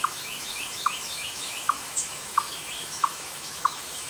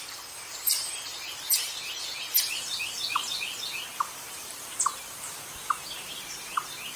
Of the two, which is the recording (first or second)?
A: second